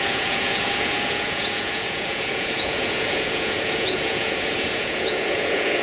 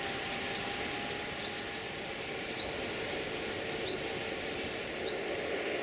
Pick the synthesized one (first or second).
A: first